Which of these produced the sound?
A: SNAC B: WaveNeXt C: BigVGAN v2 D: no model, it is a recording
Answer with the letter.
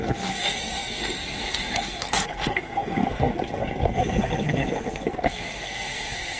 A